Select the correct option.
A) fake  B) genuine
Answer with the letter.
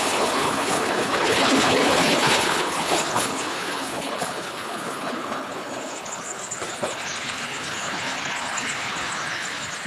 A